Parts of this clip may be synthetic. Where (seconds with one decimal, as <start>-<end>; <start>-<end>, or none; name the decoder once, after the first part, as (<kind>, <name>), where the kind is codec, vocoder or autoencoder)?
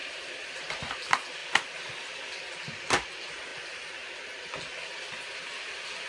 0.0-0.9 (vocoder, BigVGAN v2); 3.5-4.6